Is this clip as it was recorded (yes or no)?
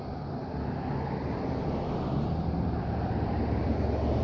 no